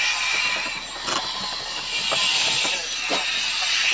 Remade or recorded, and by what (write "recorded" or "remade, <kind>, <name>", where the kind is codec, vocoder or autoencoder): recorded